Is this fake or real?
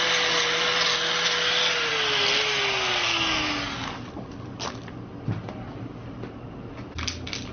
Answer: real